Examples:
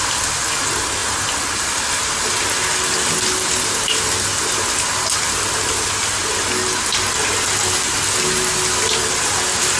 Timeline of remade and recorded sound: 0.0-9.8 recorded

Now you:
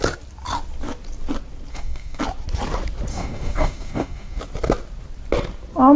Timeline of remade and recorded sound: 0.0-1.7 recorded; 1.7-2.2 remade; 2.2-3.1 recorded; 3.1-4.4 remade; 4.4-6.0 recorded

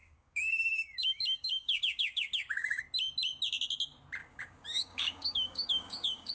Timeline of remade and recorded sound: 0.0-2.8 remade; 2.8-4.2 recorded; 4.2-6.3 remade

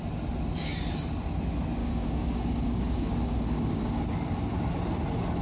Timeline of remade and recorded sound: 0.0-1.8 recorded; 1.8-4.0 remade; 4.0-5.4 recorded

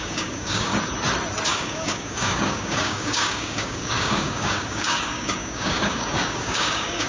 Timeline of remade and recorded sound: 0.0-0.7 remade; 0.7-1.5 recorded; 1.5-7.1 remade

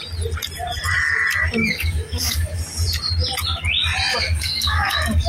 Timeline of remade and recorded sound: 0.0-1.6 recorded; 1.6-2.6 remade; 2.6-4.1 recorded; 4.1-5.3 remade

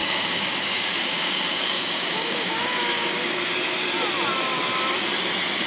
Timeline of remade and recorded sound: 0.0-3.4 remade; 3.4-5.7 recorded